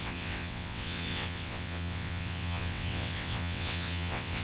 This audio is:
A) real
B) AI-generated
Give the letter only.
B